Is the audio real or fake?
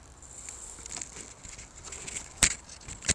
real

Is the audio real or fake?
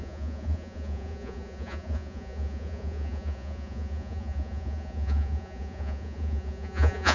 fake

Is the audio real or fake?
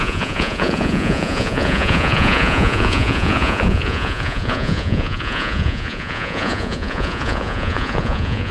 fake